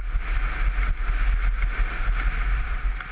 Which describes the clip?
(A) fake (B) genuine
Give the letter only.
B